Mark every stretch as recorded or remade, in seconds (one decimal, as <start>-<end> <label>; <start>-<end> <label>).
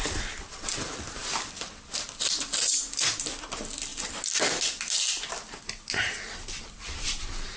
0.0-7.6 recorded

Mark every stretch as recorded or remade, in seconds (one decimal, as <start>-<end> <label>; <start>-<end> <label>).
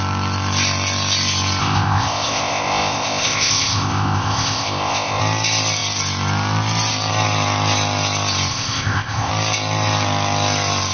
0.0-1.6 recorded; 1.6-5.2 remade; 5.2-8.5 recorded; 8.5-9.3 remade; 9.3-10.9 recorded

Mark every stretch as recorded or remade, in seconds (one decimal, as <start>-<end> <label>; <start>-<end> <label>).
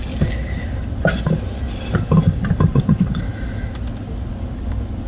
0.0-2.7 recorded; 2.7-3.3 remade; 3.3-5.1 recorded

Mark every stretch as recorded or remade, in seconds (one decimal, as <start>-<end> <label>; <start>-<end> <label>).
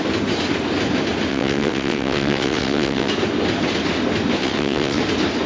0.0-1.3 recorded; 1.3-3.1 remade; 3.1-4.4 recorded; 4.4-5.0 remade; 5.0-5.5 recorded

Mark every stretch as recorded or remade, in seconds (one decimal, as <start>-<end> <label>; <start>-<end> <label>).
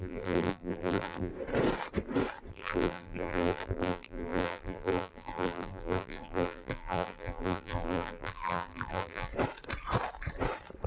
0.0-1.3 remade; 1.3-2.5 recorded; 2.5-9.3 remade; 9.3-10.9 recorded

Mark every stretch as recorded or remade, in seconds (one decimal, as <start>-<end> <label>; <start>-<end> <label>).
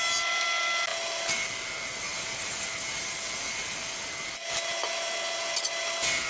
0.0-6.3 recorded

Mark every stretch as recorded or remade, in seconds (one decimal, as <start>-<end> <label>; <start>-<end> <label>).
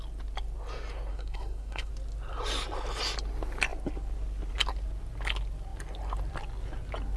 0.0-1.1 recorded; 1.1-1.9 remade; 1.9-7.2 recorded